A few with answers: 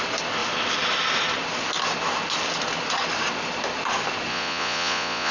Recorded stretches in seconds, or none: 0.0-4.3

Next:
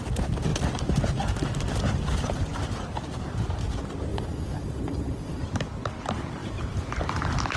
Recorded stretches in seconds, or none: 0.0-4.1; 5.4-7.6